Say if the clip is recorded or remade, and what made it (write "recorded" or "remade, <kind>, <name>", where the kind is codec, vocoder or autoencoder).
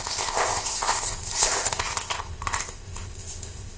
remade, codec, ZipCodec